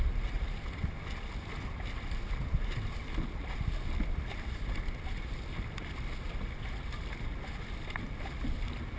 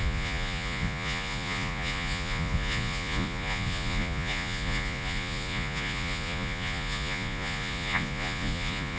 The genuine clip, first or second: first